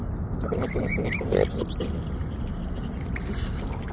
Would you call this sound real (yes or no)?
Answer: yes